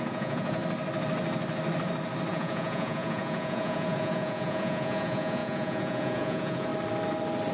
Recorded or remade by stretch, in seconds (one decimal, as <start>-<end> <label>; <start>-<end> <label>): 0.0-0.6 remade; 0.6-2.3 recorded; 2.3-6.7 remade; 6.7-7.5 recorded